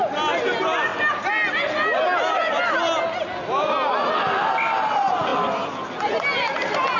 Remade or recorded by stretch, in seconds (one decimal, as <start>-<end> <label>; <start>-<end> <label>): 0.0-7.0 recorded